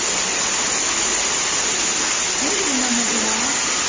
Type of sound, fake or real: real